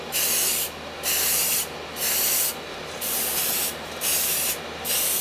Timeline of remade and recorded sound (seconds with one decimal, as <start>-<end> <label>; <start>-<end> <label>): 0.0-2.7 recorded; 2.7-4.5 remade; 4.5-5.2 recorded